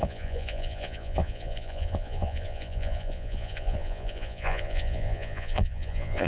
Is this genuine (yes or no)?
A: no